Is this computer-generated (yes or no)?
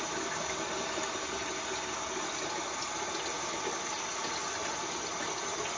no